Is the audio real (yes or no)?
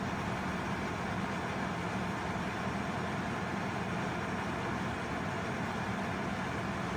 yes